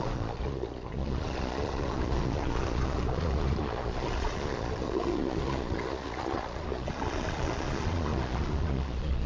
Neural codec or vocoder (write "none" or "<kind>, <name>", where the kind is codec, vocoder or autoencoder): vocoder, Vocos